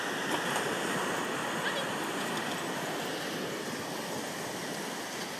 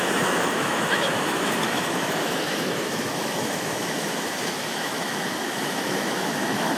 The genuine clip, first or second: first